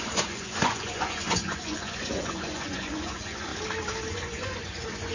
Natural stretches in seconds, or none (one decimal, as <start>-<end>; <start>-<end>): 3.5-4.1